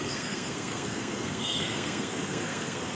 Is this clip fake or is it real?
fake